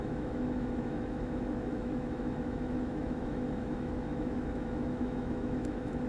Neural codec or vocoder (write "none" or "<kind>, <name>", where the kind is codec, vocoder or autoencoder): autoencoder, DAC-VAE